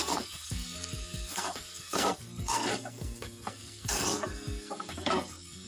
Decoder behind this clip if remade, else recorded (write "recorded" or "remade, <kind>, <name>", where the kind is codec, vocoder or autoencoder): remade, codec, SNAC